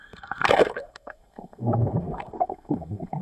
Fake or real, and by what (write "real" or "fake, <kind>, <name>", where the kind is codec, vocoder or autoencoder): fake, codec, SNAC